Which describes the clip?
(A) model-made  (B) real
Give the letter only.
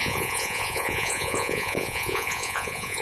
A